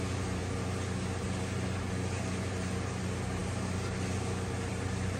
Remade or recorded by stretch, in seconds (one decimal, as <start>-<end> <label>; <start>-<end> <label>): 0.0-5.2 recorded